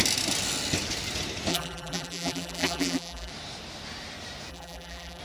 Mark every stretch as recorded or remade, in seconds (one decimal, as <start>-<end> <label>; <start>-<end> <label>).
0.0-1.5 recorded; 1.5-3.3 remade; 3.3-4.5 recorded; 4.5-5.2 remade